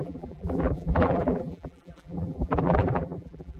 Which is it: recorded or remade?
remade